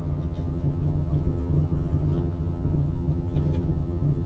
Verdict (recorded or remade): remade